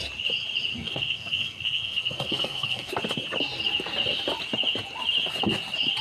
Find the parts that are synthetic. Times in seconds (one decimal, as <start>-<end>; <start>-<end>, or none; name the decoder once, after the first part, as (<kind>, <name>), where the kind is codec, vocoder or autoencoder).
0.7-2.9 (codec, SNAC)